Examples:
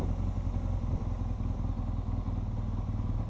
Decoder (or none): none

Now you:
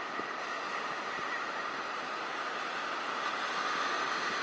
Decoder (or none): none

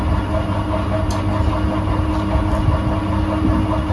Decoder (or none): none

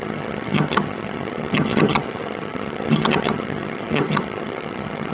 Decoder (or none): vocoder, HiFi-GAN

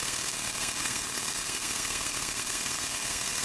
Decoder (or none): codec, SNAC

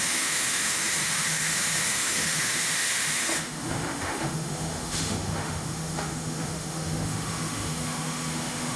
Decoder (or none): autoencoder, DAC-VAE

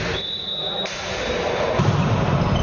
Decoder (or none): none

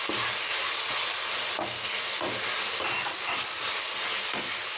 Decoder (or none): none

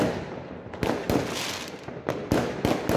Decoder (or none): none